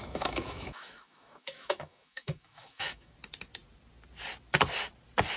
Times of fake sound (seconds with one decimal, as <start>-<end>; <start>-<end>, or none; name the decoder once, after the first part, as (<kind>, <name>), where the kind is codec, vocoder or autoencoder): 0.0-3.1 (autoencoder, DAC-VAE)